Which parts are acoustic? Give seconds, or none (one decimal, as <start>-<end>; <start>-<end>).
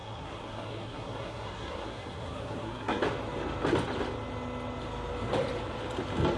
3.0-6.4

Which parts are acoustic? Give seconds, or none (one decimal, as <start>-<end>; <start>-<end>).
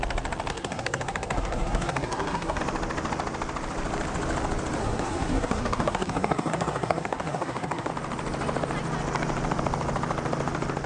0.0-0.5; 2.6-4.8; 7.9-10.9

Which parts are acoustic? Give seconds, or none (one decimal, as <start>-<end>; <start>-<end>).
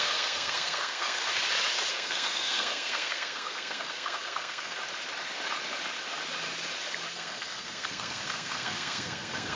1.2-1.9; 4.8-7.1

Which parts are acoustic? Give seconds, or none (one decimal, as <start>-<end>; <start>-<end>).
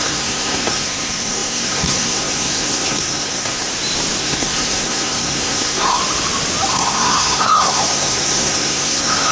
3.7-4.2; 6.0-6.7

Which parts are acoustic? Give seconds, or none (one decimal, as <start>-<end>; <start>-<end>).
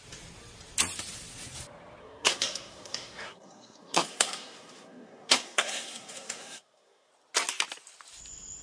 0.0-2.0; 7.1-8.6